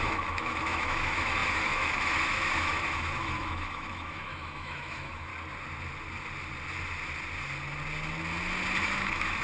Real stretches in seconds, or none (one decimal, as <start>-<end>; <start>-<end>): 5.3-8.8